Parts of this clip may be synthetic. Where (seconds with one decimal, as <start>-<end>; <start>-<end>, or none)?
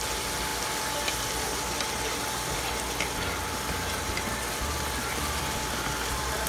none